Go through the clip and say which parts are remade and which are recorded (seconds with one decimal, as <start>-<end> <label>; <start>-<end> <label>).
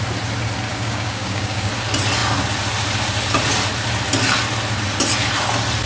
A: 0.0-0.7 recorded; 0.7-1.7 remade; 1.7-5.9 recorded